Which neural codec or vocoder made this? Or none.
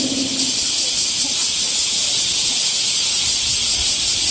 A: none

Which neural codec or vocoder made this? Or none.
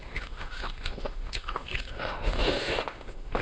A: autoencoder, DAC-VAE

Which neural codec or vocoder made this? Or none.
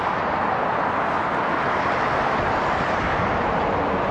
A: none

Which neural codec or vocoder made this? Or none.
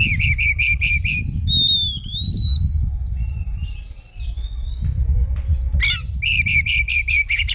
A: none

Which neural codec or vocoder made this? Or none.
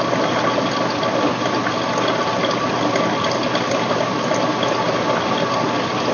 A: none